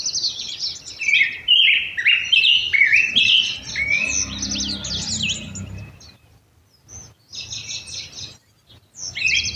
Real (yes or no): yes